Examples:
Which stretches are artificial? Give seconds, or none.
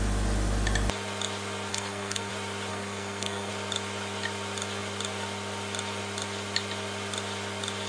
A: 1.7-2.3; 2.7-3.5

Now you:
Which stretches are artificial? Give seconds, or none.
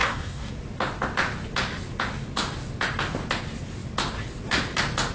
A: 0.0-0.5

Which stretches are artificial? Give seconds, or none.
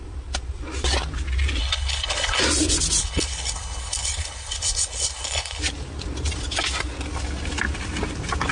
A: 1.6-2.4; 3.0-5.6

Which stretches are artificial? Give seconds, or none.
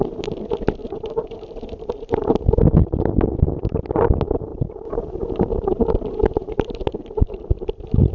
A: 0.8-2.4; 4.5-8.1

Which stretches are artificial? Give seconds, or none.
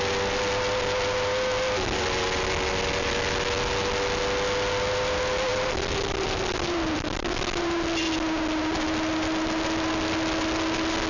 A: 5.5-7.4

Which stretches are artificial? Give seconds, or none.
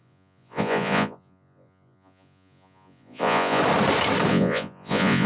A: 0.0-3.6; 4.3-5.3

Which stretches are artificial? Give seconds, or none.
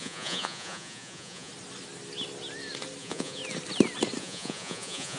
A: 0.0-1.5; 3.0-3.4; 4.2-5.2